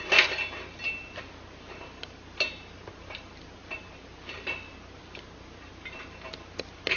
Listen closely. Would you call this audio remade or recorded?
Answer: recorded